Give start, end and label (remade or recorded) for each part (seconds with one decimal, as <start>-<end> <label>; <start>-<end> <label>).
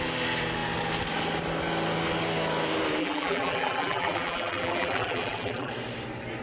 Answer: 0.0-3.0 recorded; 3.0-5.7 remade; 5.7-6.4 recorded